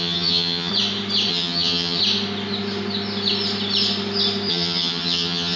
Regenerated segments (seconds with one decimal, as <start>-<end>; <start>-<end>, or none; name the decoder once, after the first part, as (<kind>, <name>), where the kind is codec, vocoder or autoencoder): 0.0-0.7 (vocoder, HiFi-GAN); 1.3-2.0; 4.5-5.6